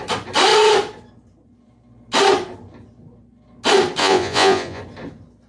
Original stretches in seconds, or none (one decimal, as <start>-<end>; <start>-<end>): 0.0-4.0; 4.8-5.5